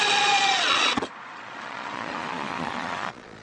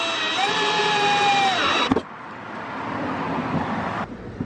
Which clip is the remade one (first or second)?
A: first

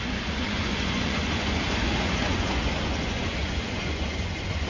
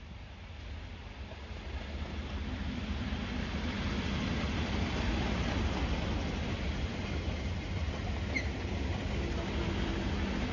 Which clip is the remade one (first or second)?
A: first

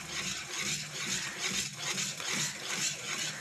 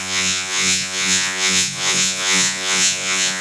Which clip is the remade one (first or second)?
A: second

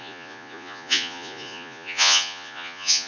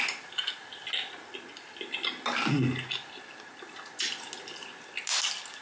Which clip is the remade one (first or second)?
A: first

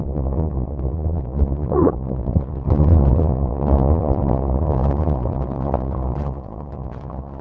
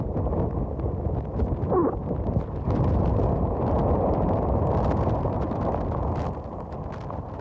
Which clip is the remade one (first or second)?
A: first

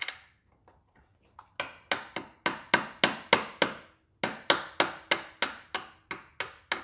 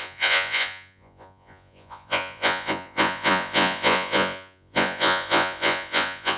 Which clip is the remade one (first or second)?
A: second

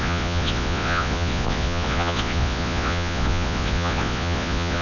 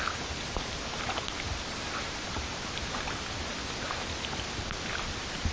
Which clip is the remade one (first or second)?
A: first